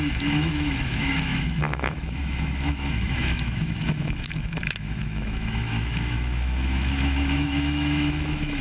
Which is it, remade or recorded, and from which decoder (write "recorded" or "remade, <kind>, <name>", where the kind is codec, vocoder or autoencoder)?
remade, autoencoder, DAC-VAE